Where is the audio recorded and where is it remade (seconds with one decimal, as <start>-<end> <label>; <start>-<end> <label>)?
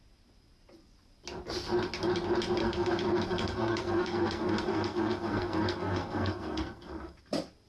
0.0-2.6 recorded; 2.6-7.2 remade; 7.2-7.7 recorded